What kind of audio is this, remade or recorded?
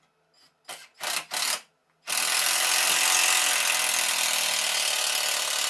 recorded